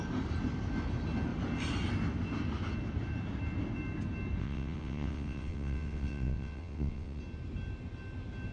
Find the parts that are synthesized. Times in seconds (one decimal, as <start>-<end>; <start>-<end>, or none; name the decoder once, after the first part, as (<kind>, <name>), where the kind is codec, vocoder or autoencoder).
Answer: 4.4-7.2 (vocoder, WaveNeXt)